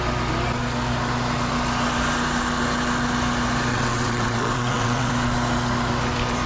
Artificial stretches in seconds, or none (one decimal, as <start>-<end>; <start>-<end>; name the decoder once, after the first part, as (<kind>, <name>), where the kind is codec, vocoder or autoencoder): 3.7-5.1 (vocoder, WaveNeXt)